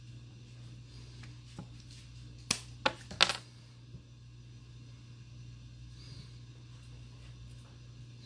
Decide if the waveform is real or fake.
real